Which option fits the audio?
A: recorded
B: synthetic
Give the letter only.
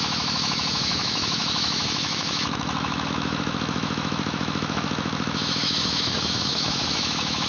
B